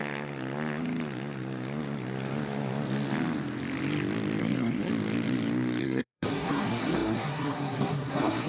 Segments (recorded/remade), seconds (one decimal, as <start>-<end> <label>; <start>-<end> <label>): 0.0-4.4 recorded; 4.4-4.9 remade; 4.9-5.8 recorded; 5.8-8.5 remade

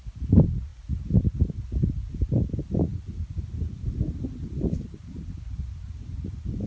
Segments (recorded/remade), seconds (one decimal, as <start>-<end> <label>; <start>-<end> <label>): 0.0-6.7 recorded

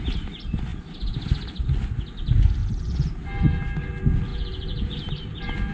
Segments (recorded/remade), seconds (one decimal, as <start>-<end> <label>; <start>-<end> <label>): 0.0-2.6 recorded; 2.6-3.2 remade; 3.2-4.3 recorded; 4.3-5.1 remade; 5.1-5.7 recorded

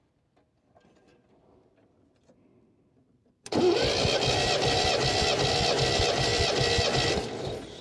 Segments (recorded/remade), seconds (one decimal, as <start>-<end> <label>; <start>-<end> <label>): 0.0-3.0 recorded; 3.0-3.6 remade; 3.6-7.8 recorded